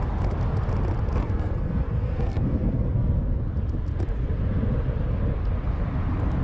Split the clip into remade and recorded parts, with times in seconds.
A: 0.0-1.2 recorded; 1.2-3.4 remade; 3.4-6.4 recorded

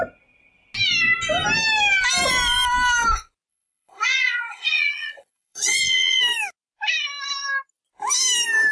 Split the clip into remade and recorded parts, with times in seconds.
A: 0.0-3.5 recorded; 3.5-6.2 remade; 6.2-8.7 recorded

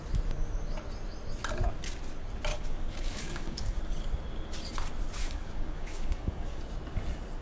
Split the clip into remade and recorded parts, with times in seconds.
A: 0.0-2.5 recorded; 2.5-3.8 remade; 3.8-5.2 recorded; 5.2-6.6 remade; 6.6-7.4 recorded

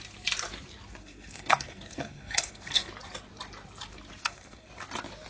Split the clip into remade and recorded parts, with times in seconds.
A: 0.0-1.0 recorded; 1.0-2.9 remade; 2.9-4.2 recorded; 4.2-4.7 remade; 4.7-5.3 recorded